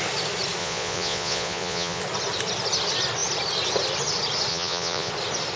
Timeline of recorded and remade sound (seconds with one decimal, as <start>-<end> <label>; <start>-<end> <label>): 0.0-0.6 recorded; 0.6-2.0 remade; 2.0-4.5 recorded; 4.5-5.1 remade; 5.1-5.6 recorded